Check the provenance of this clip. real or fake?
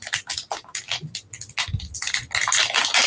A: real